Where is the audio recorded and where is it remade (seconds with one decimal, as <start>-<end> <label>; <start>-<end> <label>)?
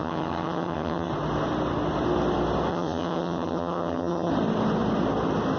0.0-1.1 remade; 1.1-2.7 recorded; 2.7-4.3 remade; 4.3-5.6 recorded